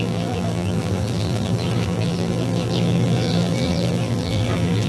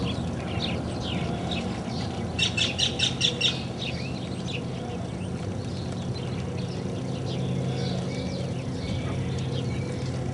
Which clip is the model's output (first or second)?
first